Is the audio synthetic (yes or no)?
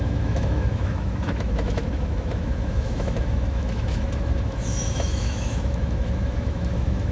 yes